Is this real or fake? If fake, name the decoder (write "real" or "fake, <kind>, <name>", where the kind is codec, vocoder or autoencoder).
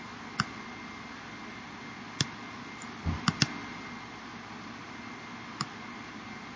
real